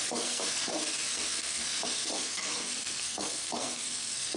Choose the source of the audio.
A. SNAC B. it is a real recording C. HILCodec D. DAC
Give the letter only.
A